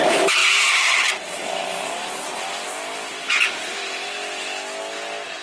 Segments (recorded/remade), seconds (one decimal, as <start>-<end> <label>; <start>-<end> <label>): 0.0-5.4 recorded